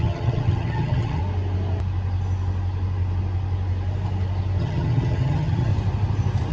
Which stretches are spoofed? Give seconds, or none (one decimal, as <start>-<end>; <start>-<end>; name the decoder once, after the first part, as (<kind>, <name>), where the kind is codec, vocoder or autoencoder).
0.0-1.2 (vocoder, HiFi-GAN); 4.6-5.7